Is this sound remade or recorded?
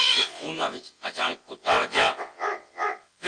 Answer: remade